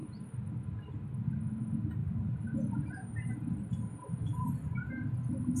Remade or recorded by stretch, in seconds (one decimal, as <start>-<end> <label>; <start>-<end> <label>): 0.0-2.0 recorded; 2.0-2.5 remade; 2.5-4.2 recorded; 4.2-4.7 remade; 4.7-5.6 recorded